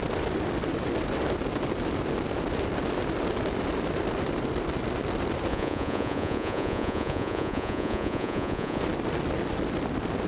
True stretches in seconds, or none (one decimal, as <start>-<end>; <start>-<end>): 0.0-5.5; 8.8-10.3